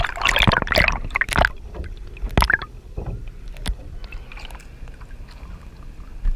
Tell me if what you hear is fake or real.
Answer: real